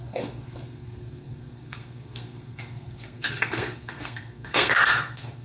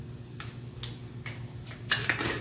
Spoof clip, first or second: first